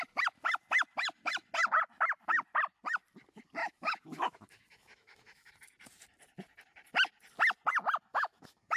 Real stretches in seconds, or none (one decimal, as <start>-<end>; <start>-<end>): 0.0-3.6; 5.5-8.1